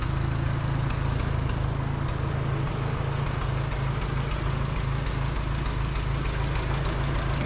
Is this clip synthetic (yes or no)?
no